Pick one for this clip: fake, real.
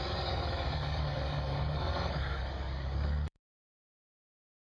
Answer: fake